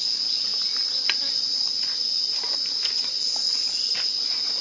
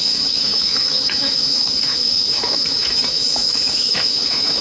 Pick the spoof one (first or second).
second